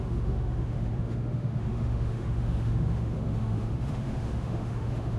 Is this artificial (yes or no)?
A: yes